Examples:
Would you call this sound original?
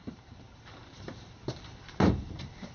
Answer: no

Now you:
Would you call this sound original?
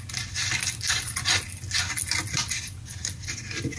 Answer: yes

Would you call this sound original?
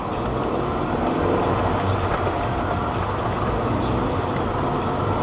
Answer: yes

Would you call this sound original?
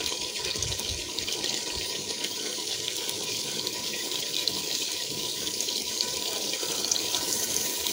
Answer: no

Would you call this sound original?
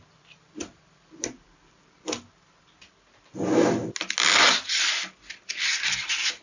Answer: yes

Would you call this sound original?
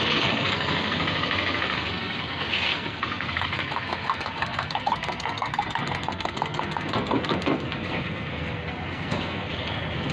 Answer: no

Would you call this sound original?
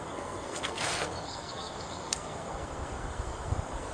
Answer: no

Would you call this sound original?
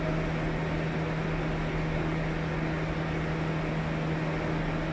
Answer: yes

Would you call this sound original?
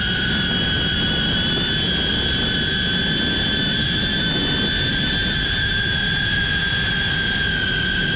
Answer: yes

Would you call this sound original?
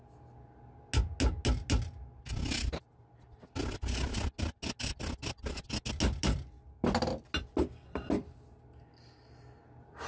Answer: yes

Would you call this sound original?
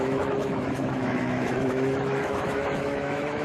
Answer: no